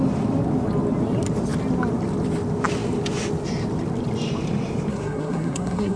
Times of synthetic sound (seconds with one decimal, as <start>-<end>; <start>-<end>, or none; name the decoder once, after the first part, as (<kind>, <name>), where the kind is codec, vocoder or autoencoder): 4.9-6.0 (codec, SNAC)